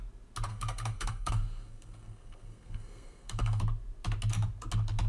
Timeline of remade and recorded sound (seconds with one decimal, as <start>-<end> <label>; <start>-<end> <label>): 0.0-0.5 recorded; 0.5-3.6 remade; 3.6-5.1 recorded